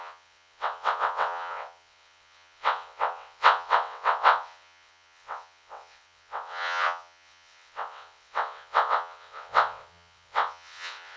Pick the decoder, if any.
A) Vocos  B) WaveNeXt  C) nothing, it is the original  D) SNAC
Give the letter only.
B